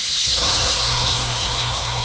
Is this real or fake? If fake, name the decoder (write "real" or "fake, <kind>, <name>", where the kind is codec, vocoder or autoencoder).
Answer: fake, codec, SNAC